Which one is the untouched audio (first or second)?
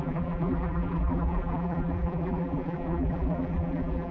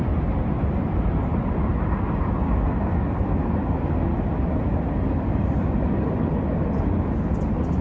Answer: second